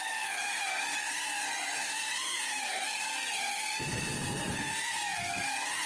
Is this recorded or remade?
remade